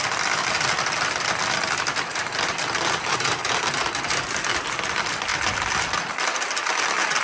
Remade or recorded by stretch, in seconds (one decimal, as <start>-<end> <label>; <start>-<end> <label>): 0.0-2.1 recorded; 2.1-3.9 remade; 3.9-7.2 recorded